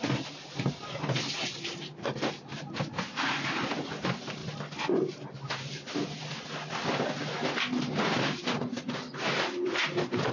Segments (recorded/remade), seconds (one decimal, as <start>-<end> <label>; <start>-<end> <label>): 0.0-10.3 recorded